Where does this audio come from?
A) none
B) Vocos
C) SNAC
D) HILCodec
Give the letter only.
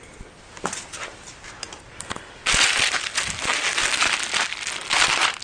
A